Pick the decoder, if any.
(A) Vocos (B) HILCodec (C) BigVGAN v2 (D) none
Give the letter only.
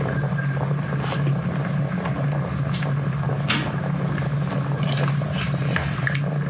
D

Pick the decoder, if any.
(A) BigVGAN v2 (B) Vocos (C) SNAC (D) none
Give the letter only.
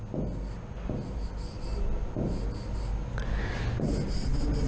D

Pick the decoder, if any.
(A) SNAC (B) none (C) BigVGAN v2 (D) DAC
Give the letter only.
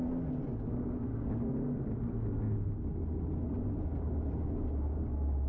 B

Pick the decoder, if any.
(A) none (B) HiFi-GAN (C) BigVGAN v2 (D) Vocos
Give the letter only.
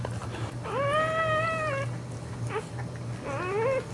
A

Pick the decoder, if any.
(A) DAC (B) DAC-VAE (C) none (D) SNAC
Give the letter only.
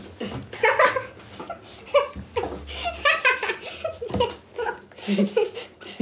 C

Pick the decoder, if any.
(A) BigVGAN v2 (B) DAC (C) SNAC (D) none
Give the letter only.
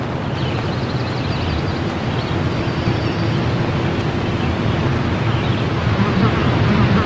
D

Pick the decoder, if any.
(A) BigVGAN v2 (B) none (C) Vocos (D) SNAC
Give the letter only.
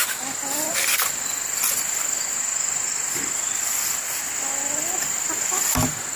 B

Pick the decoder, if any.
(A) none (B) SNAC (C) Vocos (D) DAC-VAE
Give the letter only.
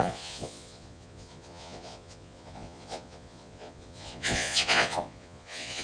C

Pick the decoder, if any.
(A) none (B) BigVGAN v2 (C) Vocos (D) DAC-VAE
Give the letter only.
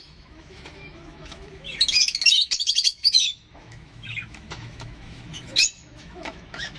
D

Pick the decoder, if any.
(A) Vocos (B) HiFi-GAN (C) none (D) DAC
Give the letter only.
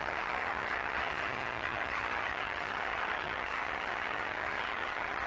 B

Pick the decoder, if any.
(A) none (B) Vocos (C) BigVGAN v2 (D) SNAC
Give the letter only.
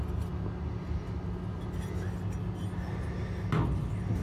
A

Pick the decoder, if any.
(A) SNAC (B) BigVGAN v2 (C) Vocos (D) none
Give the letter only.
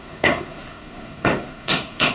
A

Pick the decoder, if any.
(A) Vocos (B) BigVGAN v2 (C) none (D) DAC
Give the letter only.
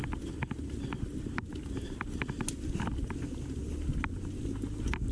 C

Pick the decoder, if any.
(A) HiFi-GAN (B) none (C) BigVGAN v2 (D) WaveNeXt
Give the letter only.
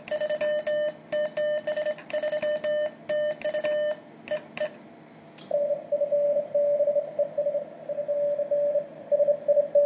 B